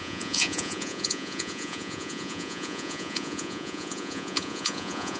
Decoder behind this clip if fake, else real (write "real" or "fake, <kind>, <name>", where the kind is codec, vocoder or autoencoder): fake, vocoder, Vocos